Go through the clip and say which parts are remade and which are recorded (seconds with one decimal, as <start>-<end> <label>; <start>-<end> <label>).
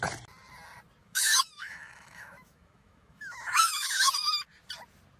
0.0-1.0 recorded; 1.0-4.1 remade; 4.1-5.2 recorded